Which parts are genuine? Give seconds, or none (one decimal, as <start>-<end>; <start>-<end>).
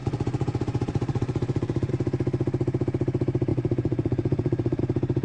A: 1.9-3.5; 4.8-5.2